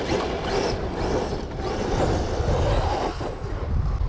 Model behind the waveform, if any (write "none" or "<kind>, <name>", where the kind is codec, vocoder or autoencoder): none